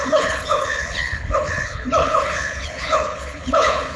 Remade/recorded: remade